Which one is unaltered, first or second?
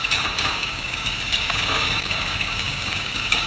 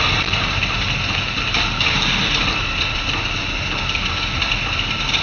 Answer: second